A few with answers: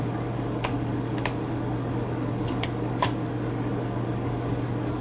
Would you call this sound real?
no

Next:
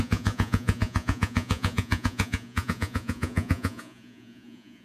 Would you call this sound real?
no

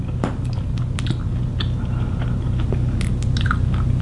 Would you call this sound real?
yes